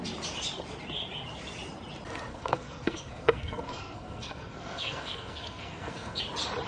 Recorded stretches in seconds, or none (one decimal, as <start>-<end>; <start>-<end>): 0.0-2.3; 6.2-6.7